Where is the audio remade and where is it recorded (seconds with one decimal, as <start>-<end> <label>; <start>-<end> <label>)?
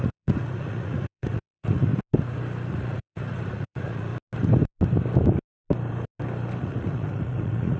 0.0-1.9 remade; 1.9-2.7 recorded; 2.7-4.1 remade; 4.1-6.6 recorded; 6.6-7.8 remade